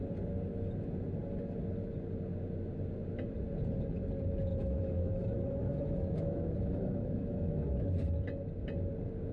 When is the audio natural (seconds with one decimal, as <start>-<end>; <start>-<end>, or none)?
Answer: 0.0-4.5; 7.9-9.3